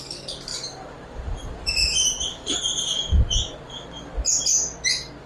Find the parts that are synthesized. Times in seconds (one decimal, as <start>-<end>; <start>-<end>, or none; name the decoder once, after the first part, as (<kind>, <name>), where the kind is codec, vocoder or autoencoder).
0.5-3.1 (vocoder, BigVGAN v2)